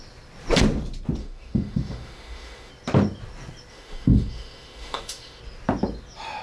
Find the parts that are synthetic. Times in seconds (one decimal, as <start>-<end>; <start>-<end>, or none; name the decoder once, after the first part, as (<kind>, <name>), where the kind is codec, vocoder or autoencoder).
1.2-2.7 (autoencoder, DAC-VAE); 3.7-5.4